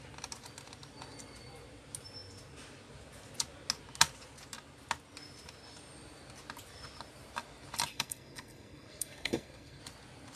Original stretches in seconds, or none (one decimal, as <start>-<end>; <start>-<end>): 0.0-7.9; 9.8-10.4